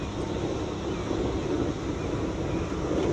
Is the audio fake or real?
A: real